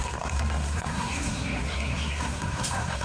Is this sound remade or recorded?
remade